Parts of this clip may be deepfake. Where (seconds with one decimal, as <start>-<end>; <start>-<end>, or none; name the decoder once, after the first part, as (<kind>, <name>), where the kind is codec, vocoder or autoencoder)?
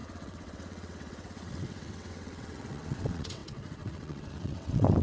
0.0-5.0 (vocoder, WaveNeXt)